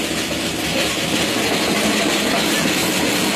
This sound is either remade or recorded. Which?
recorded